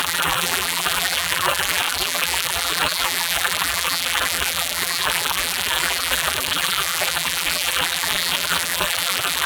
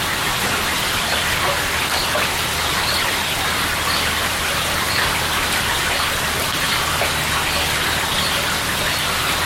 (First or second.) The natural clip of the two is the second